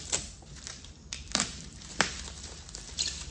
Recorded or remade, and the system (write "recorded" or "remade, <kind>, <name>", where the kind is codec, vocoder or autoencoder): remade, vocoder, BigVGAN v2